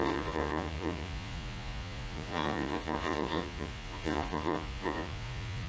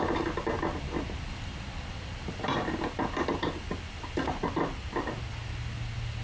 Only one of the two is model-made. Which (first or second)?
first